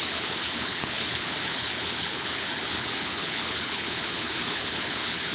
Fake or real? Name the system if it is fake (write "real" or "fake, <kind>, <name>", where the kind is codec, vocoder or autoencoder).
fake, codec, HILCodec